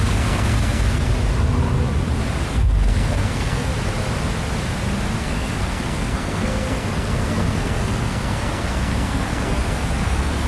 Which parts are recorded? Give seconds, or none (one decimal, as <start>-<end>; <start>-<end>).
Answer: 1.1-2.5; 3.7-5.2